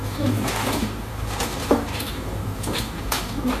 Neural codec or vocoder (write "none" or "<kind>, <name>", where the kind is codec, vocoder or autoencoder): codec, DAC